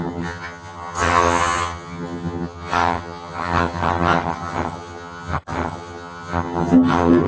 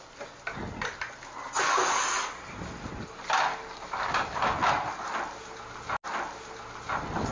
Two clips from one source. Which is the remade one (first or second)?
first